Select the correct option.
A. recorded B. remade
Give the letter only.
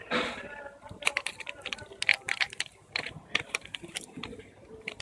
B